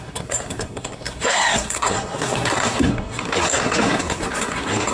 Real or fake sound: fake